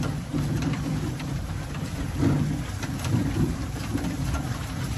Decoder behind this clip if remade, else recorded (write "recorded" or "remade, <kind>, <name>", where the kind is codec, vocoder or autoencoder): remade, vocoder, BigVGAN v2